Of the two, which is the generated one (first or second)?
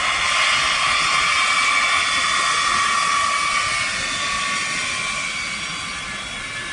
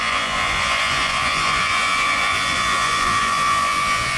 second